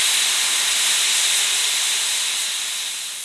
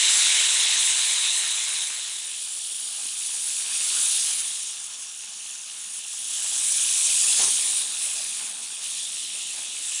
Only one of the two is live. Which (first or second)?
first